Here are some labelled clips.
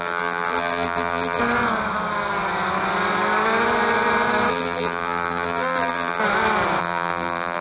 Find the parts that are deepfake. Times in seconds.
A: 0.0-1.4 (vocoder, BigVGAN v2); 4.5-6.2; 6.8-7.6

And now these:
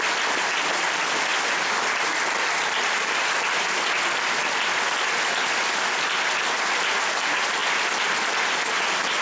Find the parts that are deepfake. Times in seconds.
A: none